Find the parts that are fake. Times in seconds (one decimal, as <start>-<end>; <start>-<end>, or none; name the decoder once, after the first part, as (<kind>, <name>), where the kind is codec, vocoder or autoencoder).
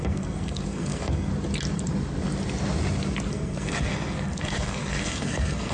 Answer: 0.0-1.3 (codec, SNAC); 3.3-5.7